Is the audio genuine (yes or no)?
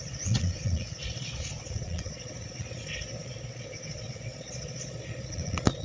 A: no